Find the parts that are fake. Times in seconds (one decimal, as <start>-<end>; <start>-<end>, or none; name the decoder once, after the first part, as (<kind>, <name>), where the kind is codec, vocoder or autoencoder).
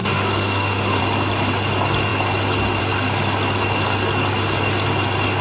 0.0-1.0 (autoencoder, DAC-VAE)